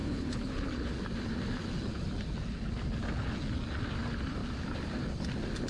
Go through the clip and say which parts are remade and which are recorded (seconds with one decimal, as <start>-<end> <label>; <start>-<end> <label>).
0.0-0.9 remade; 0.9-5.7 recorded

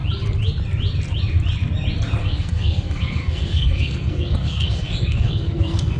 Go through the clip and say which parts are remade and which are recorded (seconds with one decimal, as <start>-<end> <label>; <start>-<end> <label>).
0.0-2.2 recorded; 2.2-6.0 remade

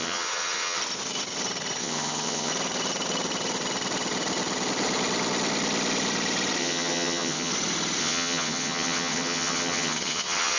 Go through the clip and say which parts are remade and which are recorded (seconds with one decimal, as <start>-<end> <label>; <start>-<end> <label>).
0.0-0.8 remade; 0.8-1.8 recorded; 1.8-2.5 remade; 2.5-6.6 recorded; 6.6-7.5 remade; 7.5-8.0 recorded; 8.0-10.6 remade

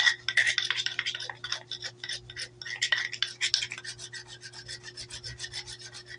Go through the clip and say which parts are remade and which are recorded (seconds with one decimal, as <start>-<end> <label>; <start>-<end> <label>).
0.0-6.2 recorded

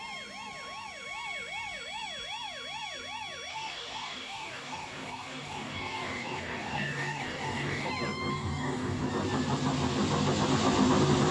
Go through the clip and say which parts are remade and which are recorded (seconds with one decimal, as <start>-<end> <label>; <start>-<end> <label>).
0.0-3.5 recorded; 3.5-7.9 remade; 7.9-8.3 recorded; 8.3-9.1 remade; 9.1-11.3 recorded

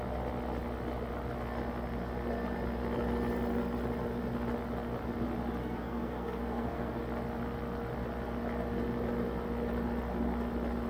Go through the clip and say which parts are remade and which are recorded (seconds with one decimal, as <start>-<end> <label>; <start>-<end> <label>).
0.0-5.6 recorded; 5.6-7.0 remade; 7.0-10.9 recorded